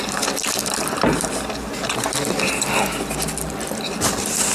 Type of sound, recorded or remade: recorded